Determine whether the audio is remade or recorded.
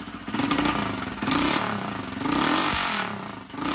recorded